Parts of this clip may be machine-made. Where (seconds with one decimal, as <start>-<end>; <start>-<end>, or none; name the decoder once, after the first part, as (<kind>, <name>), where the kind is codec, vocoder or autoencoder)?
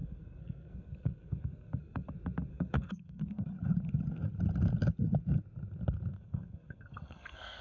0.0-2.1 (codec, SNAC); 2.5-3.5; 6.1-7.6